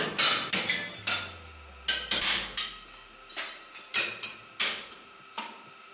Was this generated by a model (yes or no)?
no